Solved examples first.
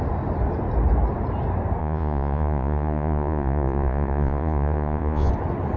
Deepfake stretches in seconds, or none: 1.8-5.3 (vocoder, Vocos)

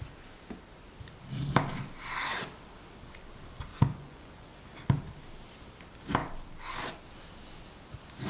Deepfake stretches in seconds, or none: 3.7-4.6 (vocoder, Vocos)

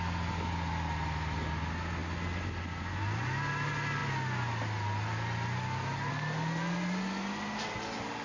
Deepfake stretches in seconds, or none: none

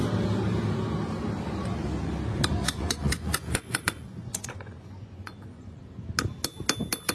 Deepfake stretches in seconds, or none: 2.6-5.8 (vocoder, Vocos)

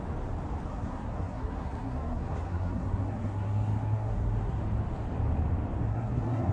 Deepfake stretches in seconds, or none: 0.7-4.6 (codec, SNAC); 5.9-6.5